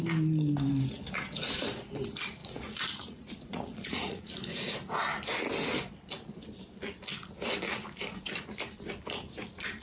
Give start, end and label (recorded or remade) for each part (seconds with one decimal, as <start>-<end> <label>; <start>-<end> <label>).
0.0-2.4 recorded; 2.4-4.7 remade; 4.7-9.8 recorded